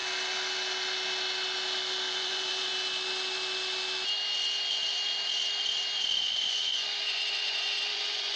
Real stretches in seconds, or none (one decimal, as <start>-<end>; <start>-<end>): 0.0-2.1; 2.7-6.2